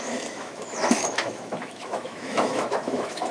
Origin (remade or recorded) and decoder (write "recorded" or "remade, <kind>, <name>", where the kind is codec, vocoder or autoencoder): remade, autoencoder, DAC-VAE